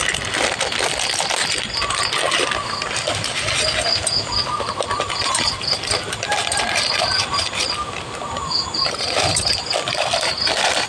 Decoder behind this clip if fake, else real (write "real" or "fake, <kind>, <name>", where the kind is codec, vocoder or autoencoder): real